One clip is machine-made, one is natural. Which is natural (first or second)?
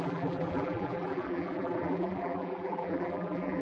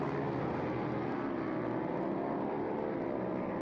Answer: second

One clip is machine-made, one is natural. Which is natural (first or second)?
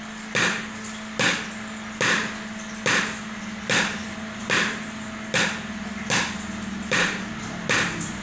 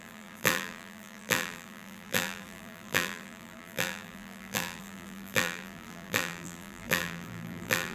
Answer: first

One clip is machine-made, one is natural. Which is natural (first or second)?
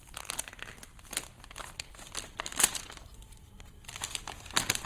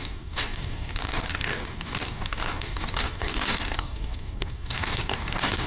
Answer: first